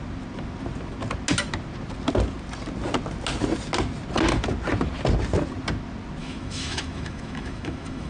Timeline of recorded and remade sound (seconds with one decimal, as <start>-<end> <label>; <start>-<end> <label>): 0.0-6.2 recorded; 6.2-8.1 remade